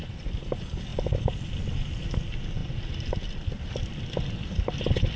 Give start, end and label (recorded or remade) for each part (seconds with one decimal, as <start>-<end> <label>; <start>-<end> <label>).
0.0-5.2 recorded